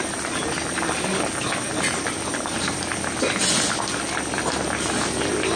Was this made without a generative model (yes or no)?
yes